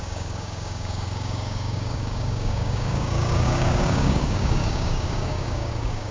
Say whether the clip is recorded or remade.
remade